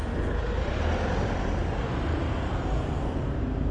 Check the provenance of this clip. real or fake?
real